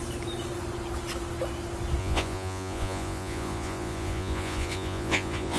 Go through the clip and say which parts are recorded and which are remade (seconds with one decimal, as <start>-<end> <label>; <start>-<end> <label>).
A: 0.0-2.0 recorded; 2.0-5.6 remade